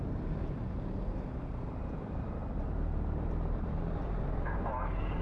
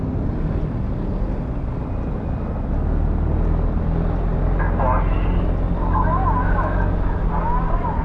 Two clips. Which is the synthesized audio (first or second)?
first